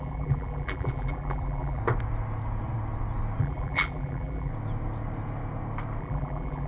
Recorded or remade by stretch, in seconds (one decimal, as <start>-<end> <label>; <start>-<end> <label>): 0.0-1.8 remade; 1.8-3.4 recorded; 3.4-4.5 remade; 4.5-6.0 recorded; 6.0-6.7 remade